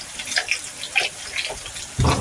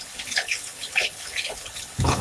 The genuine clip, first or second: first